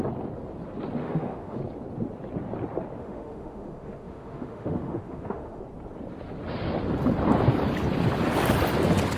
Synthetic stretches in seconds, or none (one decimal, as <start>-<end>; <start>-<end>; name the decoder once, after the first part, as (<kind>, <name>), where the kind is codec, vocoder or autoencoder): 1.0-1.6 (autoencoder, DAC-VAE); 3.0-5.6